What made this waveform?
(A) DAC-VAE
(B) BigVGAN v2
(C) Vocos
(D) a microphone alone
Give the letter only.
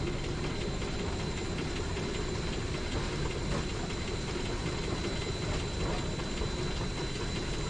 D